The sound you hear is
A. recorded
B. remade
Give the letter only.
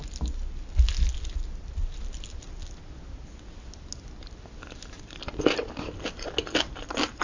A